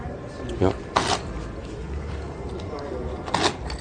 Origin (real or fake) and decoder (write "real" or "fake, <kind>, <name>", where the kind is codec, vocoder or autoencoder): real